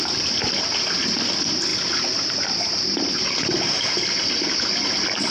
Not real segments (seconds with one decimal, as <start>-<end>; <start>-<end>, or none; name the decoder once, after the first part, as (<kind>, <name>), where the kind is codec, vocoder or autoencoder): none